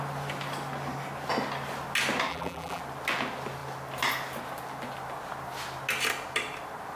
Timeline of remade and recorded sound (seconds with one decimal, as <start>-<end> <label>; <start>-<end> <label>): 0.0-2.3 recorded; 2.3-2.8 remade; 2.8-7.0 recorded